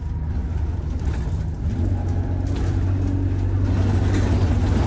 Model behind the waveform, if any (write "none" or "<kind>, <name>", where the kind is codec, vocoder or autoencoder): none